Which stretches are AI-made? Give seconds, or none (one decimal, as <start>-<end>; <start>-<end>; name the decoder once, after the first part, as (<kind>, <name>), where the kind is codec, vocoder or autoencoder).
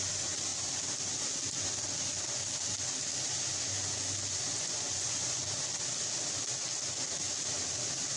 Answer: 4.4-5.4 (vocoder, Vocos)